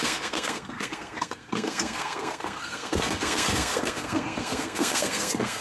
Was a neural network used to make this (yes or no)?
yes